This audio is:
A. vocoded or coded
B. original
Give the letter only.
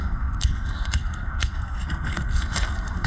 A